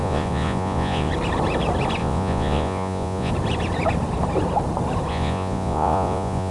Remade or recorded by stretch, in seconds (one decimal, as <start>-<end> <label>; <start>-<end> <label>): 0.0-1.1 remade; 1.1-2.0 recorded; 2.0-3.3 remade; 3.3-5.1 recorded; 5.1-6.5 remade